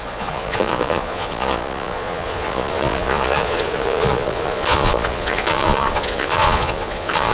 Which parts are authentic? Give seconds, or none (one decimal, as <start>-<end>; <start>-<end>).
none

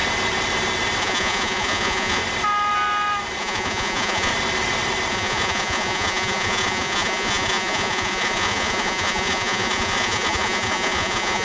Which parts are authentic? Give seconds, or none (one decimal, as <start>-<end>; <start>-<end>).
0.0-1.0; 2.2-3.4; 4.3-5.1

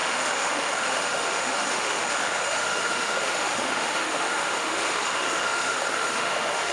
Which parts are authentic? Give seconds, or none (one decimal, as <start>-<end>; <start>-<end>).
none

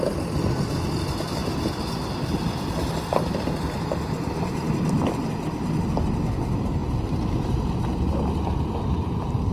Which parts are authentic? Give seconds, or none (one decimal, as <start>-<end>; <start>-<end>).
0.0-6.8; 7.8-9.5